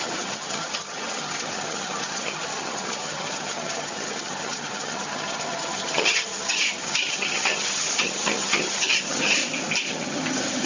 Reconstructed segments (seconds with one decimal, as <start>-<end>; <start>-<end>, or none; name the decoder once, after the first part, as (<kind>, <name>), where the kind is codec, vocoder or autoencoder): 0.0-9.4 (vocoder, HiFi-GAN); 9.9-10.7